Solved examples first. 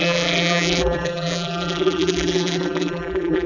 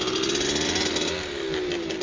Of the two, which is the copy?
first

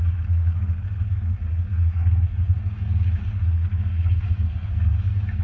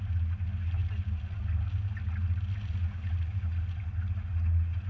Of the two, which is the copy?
first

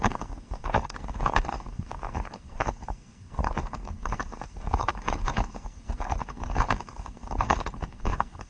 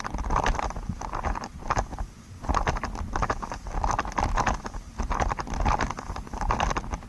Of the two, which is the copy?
first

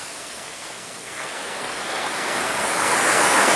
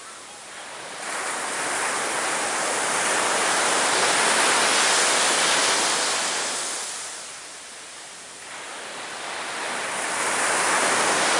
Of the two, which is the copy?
first